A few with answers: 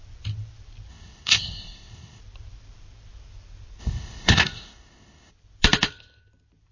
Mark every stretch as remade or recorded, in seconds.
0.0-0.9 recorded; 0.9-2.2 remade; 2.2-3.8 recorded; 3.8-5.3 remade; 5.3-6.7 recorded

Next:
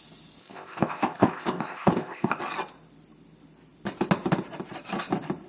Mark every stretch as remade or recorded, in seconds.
0.0-0.4 recorded; 0.4-2.4 remade; 2.4-5.5 recorded